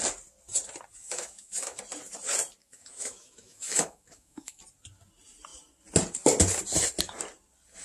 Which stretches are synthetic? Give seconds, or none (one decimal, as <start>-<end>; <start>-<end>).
1.0-1.8; 2.6-4.6